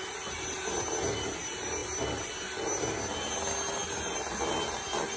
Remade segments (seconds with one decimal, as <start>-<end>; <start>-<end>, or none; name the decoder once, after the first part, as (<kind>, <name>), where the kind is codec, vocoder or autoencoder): none